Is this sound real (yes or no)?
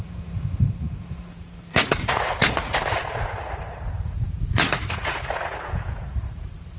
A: no